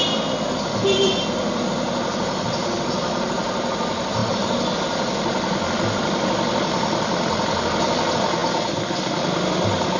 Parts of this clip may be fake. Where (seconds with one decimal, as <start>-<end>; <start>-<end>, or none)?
none